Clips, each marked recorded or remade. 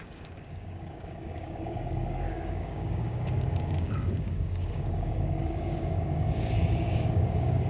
remade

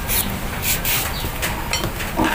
recorded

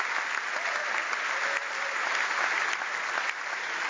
recorded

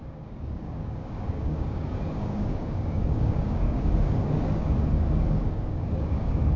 remade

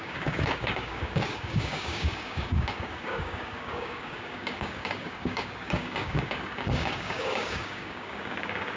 remade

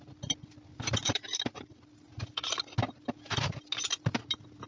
recorded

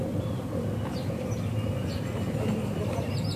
recorded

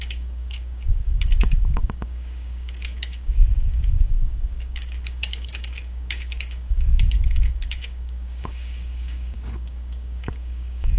remade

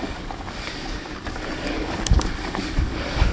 remade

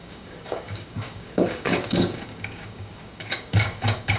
remade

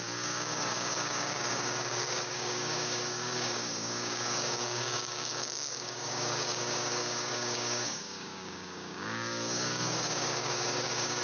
remade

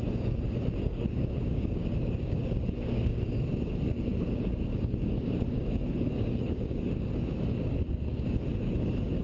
remade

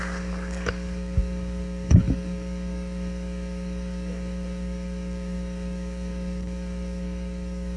remade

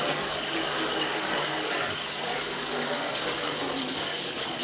remade